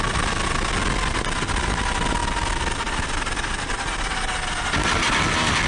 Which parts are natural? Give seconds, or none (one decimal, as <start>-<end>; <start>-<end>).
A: 0.0-5.7